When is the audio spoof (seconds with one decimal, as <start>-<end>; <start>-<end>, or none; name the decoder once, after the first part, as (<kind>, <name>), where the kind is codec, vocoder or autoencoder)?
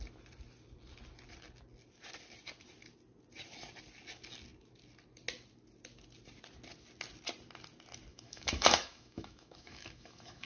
8.1-10.5 (autoencoder, DAC-VAE)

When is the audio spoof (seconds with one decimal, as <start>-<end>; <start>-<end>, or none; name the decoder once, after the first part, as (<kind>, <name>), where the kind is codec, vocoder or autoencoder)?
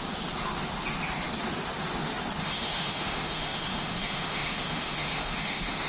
2.4-5.9 (autoencoder, DAC-VAE)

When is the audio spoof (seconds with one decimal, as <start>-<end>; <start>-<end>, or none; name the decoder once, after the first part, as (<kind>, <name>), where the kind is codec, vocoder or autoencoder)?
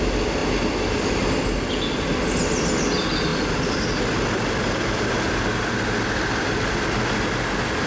none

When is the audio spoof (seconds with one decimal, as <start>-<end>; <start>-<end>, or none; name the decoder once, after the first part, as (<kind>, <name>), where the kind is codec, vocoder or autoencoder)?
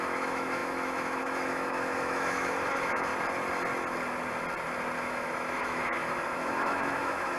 0.0-3.1 (autoencoder, DAC-VAE); 5.0-7.4